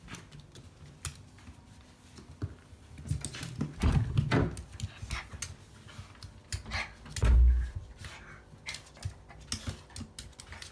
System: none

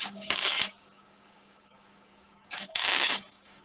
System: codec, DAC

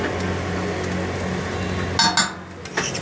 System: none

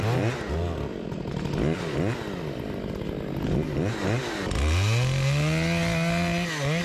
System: none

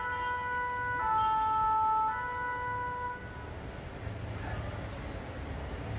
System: none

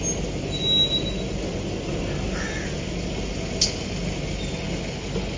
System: none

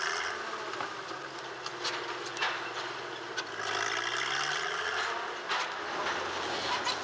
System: none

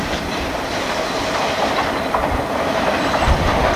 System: vocoder, BigVGAN v2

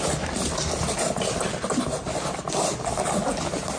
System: none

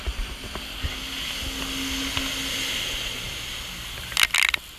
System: none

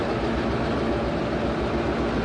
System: none